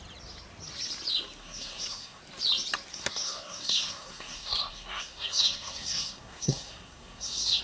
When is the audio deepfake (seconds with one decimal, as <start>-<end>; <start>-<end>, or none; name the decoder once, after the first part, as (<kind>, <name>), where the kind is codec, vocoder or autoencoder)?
1.4-2.2 (codec, SNAC); 2.9-7.6